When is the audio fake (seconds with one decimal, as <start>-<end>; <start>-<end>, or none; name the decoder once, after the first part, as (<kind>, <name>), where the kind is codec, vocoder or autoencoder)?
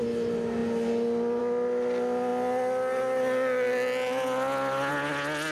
none